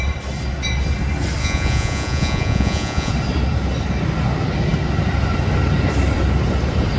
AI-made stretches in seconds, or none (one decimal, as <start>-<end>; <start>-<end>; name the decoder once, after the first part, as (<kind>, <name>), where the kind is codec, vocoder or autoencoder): 1.4-3.1 (vocoder, Vocos)